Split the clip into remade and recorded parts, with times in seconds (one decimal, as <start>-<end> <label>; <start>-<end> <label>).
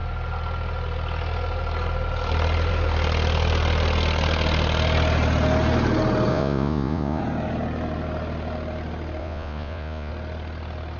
0.0-6.3 recorded; 6.3-7.2 remade; 7.2-9.2 recorded; 9.2-10.1 remade; 10.1-11.0 recorded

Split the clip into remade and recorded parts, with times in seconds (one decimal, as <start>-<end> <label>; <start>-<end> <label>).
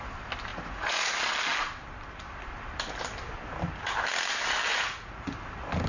0.0-0.5 recorded; 0.5-1.1 remade; 1.1-4.7 recorded; 4.7-5.3 remade; 5.3-5.9 recorded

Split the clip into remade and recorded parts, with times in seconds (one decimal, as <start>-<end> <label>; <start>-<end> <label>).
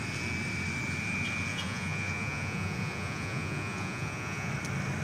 0.0-1.5 recorded; 1.5-4.5 remade; 4.5-5.0 recorded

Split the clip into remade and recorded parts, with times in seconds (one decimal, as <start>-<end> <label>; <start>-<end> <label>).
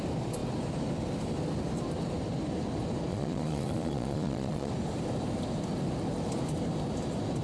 0.0-3.1 recorded; 3.1-4.7 remade; 4.7-7.4 recorded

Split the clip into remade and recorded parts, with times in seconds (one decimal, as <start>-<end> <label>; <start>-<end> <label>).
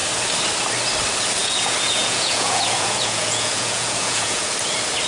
0.0-1.4 recorded; 1.4-4.5 remade; 4.5-5.1 recorded